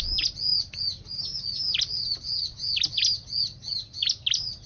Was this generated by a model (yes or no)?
no